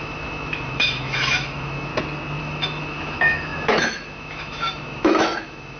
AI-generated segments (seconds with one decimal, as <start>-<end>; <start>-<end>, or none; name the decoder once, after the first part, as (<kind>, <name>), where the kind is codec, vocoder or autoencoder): 0.0-1.9 (autoencoder, DAC-VAE); 2.4-5.8